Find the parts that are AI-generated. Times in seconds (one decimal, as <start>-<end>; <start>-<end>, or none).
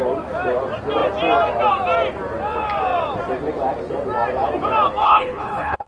5.0-5.9